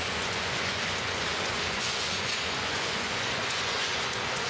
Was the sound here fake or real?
fake